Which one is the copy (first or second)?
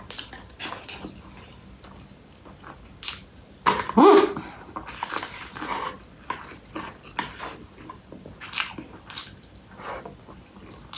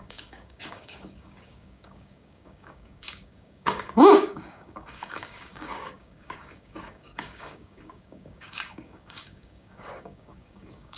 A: second